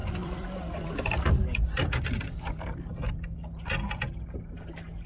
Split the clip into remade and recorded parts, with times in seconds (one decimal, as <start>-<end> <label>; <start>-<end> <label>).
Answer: 0.0-3.1 remade; 3.1-5.1 recorded